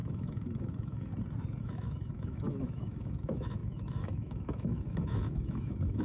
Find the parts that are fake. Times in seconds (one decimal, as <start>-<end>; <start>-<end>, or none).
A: 0.0-1.1; 1.6-6.0